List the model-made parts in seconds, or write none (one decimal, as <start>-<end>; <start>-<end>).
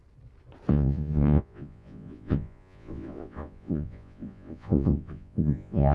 0.7-5.9